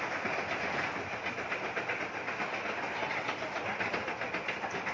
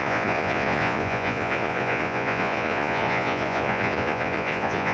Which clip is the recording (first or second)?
first